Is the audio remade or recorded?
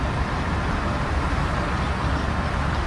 recorded